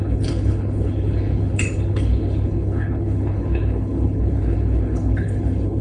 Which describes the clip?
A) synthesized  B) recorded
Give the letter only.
A